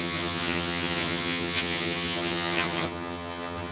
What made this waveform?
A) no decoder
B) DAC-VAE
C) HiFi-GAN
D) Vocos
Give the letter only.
C